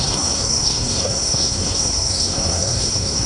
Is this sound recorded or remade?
remade